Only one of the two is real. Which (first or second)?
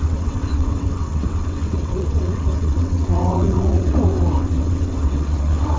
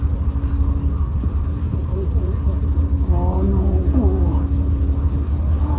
second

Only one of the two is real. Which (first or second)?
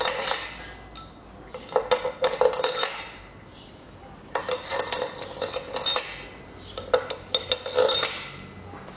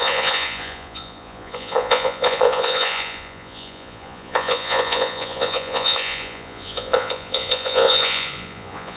first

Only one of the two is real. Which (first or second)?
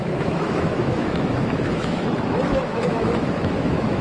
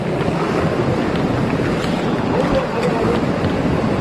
second